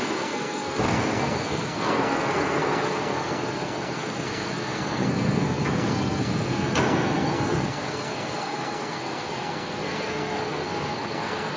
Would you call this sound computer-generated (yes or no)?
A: yes